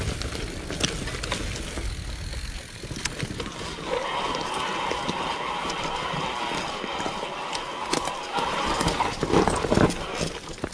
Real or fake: real